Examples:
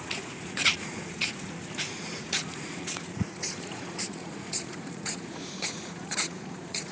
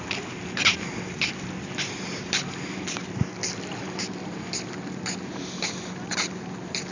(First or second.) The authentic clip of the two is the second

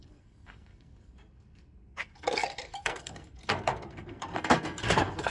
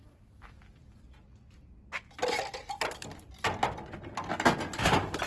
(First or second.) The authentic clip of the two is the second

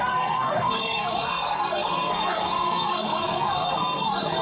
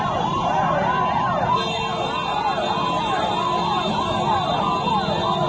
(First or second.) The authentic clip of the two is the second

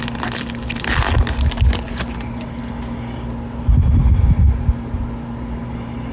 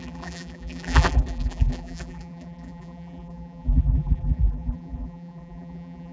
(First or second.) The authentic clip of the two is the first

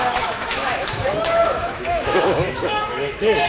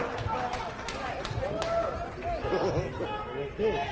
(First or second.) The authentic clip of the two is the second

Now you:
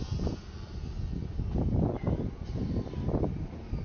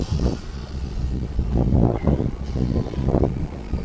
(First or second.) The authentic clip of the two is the first